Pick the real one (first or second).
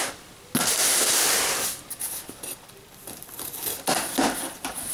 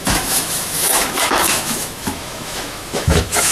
first